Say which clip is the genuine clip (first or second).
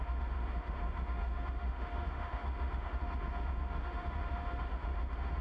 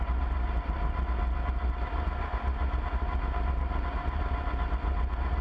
second